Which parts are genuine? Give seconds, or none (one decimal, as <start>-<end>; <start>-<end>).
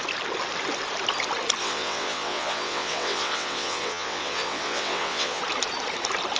0.0-1.6; 5.4-6.4